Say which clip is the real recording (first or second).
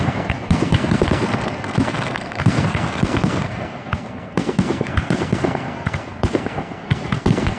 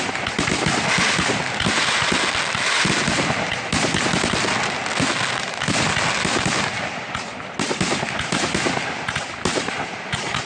second